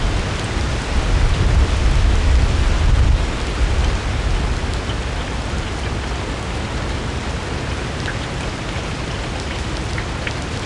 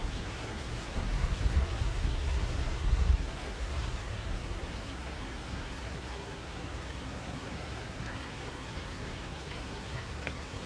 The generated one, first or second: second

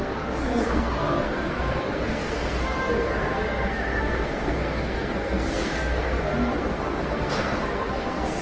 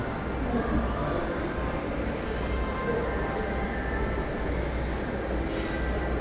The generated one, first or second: first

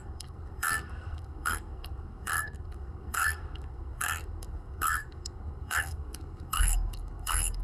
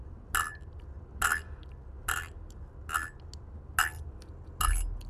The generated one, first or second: first